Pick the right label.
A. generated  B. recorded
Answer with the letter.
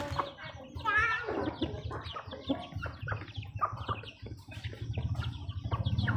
B